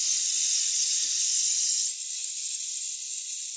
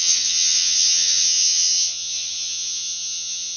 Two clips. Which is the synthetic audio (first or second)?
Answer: second